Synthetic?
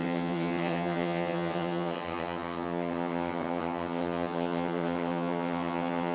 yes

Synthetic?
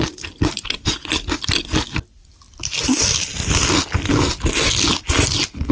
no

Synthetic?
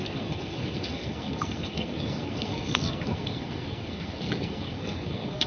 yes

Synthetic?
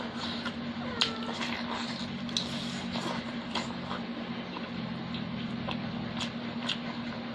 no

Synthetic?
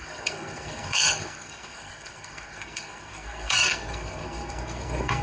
yes